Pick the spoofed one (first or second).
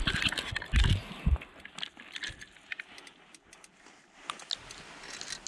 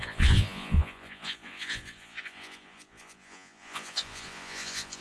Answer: second